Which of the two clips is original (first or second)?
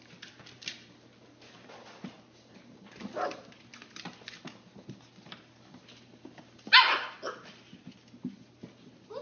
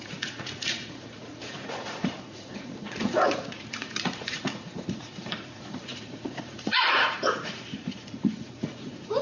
first